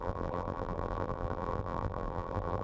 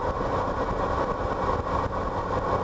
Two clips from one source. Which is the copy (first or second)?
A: first